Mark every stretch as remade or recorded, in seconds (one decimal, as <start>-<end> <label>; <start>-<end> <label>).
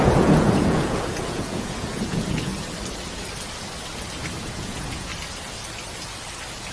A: 0.0-2.5 remade; 2.5-4.4 recorded; 4.4-5.1 remade; 5.1-6.7 recorded